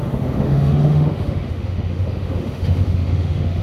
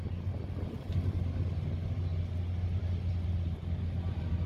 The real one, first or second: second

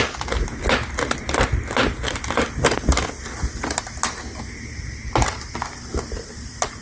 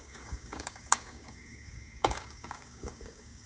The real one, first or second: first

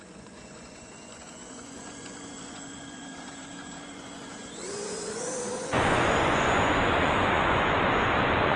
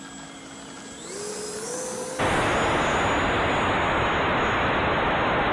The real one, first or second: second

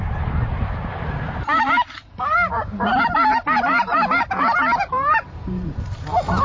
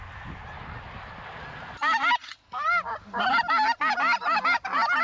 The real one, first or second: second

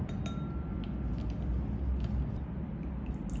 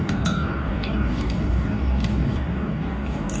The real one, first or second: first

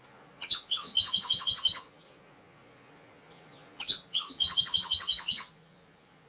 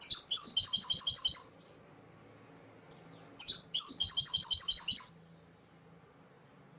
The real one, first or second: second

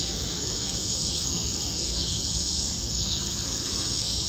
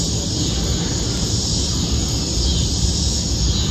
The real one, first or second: second